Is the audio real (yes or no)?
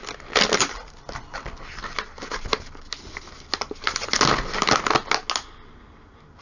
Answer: yes